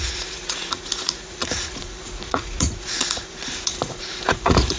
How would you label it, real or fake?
fake